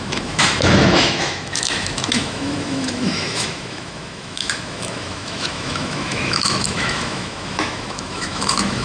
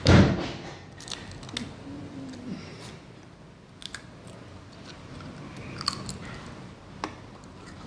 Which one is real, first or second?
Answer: second